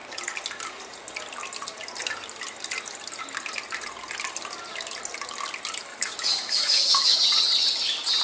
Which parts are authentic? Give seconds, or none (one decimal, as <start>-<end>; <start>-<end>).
0.0-5.9; 7.2-8.2